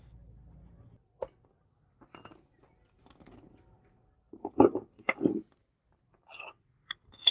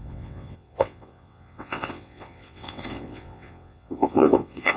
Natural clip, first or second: first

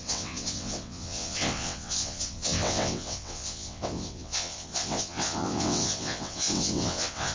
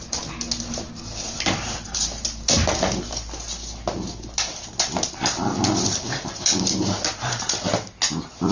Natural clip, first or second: second